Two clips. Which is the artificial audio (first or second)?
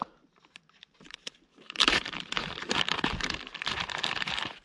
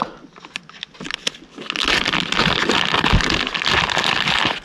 first